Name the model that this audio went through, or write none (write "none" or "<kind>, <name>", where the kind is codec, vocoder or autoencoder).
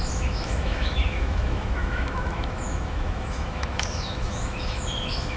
autoencoder, DAC-VAE